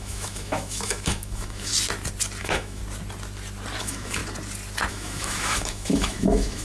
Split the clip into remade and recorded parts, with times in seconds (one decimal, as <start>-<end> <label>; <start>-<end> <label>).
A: 0.0-1.7 remade; 1.7-2.4 recorded; 2.4-2.8 remade; 2.8-3.8 recorded; 3.8-4.2 remade; 4.2-4.9 recorded; 4.9-6.6 remade